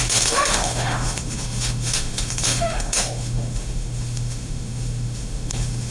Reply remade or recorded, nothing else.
remade